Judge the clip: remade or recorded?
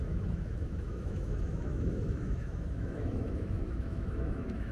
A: remade